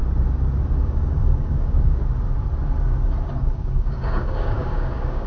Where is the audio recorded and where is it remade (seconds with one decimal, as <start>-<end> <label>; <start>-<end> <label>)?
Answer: 0.0-0.8 recorded; 0.8-2.0 remade; 2.0-3.4 recorded; 3.4-5.3 remade